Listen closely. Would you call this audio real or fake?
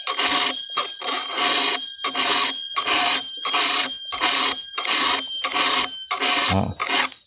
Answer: real